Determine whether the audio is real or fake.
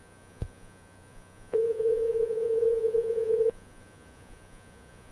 fake